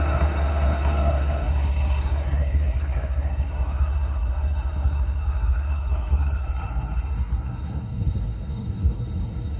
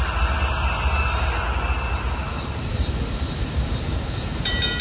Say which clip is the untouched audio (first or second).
second